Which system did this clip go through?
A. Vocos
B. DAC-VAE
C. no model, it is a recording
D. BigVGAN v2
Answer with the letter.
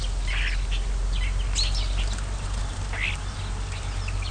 C